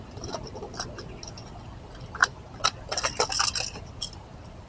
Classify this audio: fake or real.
real